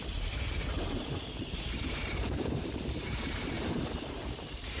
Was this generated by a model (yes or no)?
yes